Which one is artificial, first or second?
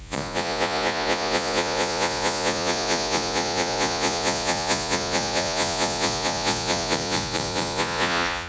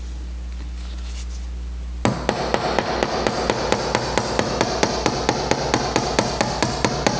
first